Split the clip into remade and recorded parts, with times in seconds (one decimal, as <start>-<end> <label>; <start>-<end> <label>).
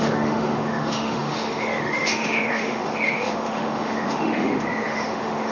0.0-5.5 remade